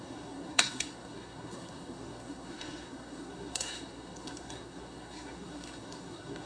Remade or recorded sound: remade